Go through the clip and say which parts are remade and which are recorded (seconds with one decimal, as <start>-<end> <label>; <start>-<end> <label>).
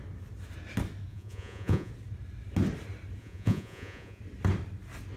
0.0-1.1 recorded; 1.1-1.9 remade; 1.9-3.2 recorded; 3.2-4.2 remade; 4.2-5.2 recorded